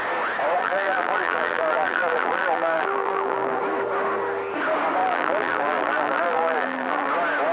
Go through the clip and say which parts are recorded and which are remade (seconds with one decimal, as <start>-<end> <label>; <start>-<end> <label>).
0.0-0.6 recorded; 0.6-3.6 remade; 3.6-5.0 recorded; 5.0-7.1 remade; 7.1-7.5 recorded